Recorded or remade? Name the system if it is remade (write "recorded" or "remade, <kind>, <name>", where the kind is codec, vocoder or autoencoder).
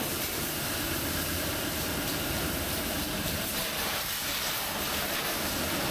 remade, vocoder, BigVGAN v2